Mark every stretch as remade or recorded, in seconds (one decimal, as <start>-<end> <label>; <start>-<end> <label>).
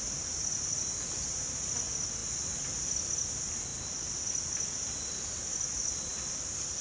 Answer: 0.0-6.8 recorded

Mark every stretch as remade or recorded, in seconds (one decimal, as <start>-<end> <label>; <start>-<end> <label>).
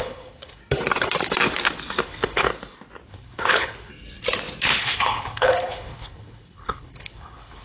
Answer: 0.0-0.6 remade; 0.6-2.0 recorded; 2.0-2.5 remade; 2.5-3.1 recorded; 3.1-3.9 remade; 3.9-4.8 recorded; 4.8-7.6 remade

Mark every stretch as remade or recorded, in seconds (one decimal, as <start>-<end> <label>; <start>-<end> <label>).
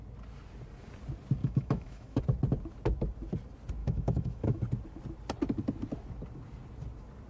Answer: 0.0-1.4 recorded; 1.4-2.2 remade; 2.2-3.8 recorded; 3.8-4.6 remade; 4.6-7.3 recorded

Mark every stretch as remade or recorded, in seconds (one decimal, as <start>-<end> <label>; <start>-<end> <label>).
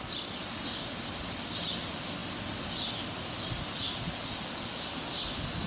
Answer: 0.0-5.7 recorded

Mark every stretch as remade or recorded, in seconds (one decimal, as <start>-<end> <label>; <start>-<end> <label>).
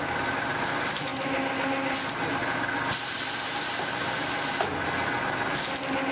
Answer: 0.0-6.1 recorded